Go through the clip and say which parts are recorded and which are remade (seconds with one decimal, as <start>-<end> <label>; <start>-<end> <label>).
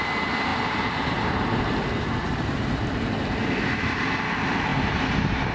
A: 0.0-0.5 recorded; 0.5-3.5 remade; 3.5-4.7 recorded; 4.7-5.5 remade